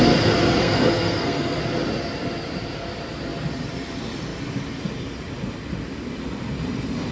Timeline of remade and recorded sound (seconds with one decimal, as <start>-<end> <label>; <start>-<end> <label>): 0.0-0.6 recorded; 0.6-1.6 remade; 1.6-7.1 recorded